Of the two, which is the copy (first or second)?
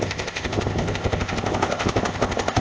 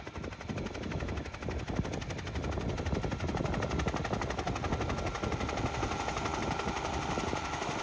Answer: first